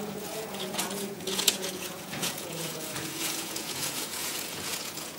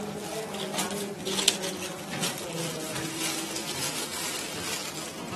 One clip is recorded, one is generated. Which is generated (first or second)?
first